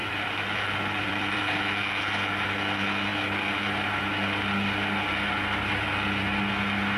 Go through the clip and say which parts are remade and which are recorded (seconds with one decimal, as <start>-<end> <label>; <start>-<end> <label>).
0.0-1.4 remade; 1.4-7.0 recorded

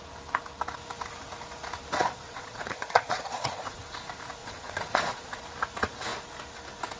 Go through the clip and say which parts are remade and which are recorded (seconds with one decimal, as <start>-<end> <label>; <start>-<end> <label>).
0.0-2.0 recorded; 2.0-3.8 remade; 3.8-4.4 recorded; 4.4-5.4 remade; 5.4-7.0 recorded

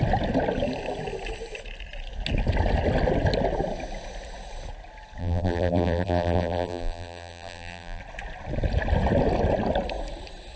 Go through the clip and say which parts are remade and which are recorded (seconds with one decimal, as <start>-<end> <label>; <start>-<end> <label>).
0.0-5.2 recorded; 5.2-8.0 remade; 8.0-10.6 recorded

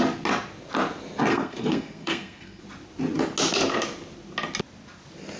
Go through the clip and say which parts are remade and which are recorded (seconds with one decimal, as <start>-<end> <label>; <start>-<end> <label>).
0.0-1.3 recorded; 1.3-2.6 remade; 2.6-5.4 recorded